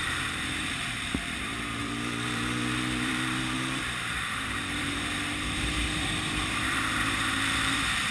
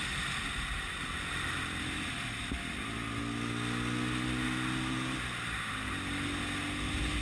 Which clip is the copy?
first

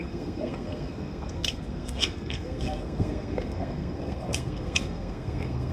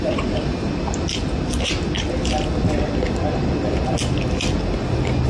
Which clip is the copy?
first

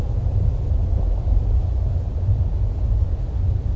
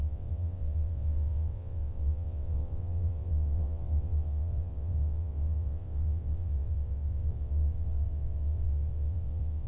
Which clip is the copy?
second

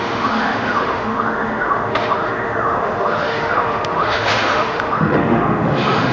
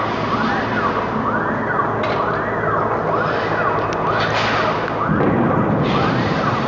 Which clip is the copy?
first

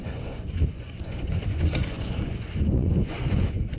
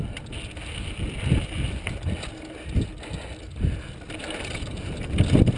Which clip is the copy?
first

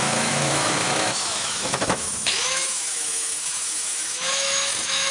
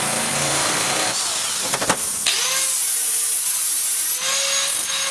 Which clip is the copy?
first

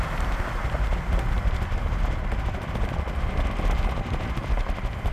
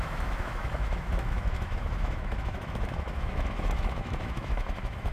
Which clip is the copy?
second